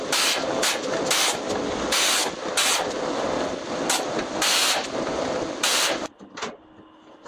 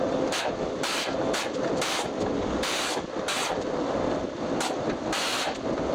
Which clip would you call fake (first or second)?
second